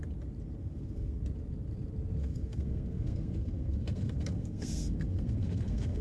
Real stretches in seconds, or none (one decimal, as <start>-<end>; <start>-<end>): 0.0-0.6; 1.2-2.2